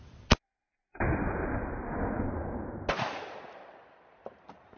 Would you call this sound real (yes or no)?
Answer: yes